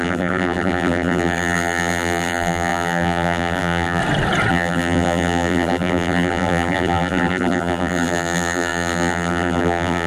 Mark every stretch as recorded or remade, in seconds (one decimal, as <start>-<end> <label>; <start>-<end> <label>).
0.0-4.0 remade; 4.0-4.5 recorded; 4.5-10.1 remade